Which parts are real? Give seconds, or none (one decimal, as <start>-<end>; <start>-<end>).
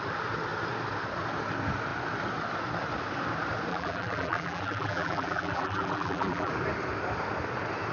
0.0-3.7; 6.5-7.9